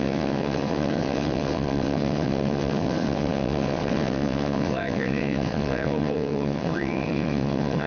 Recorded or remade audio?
remade